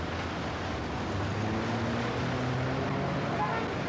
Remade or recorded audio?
recorded